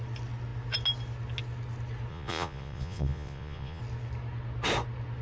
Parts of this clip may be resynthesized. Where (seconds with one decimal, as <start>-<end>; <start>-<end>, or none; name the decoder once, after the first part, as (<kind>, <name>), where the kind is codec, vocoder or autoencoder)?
2.1-3.8 (vocoder, Vocos)